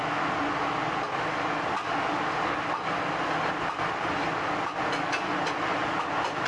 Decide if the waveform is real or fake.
real